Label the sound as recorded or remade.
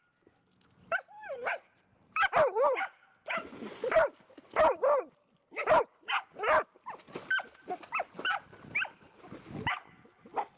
recorded